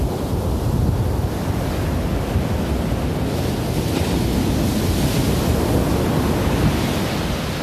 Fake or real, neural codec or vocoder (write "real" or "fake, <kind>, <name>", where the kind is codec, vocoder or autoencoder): real